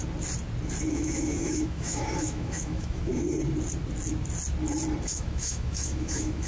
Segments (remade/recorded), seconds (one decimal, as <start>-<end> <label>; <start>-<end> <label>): 0.0-0.9 recorded; 0.9-3.1 remade; 3.1-5.0 recorded; 5.0-6.5 remade